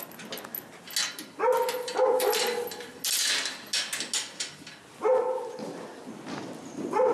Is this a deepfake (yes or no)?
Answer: no